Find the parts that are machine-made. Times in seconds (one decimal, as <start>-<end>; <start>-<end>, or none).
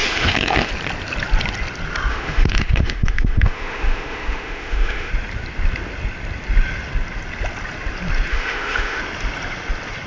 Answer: 0.0-0.7; 2.1-5.1; 8.3-9.0